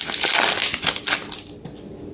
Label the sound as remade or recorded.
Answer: recorded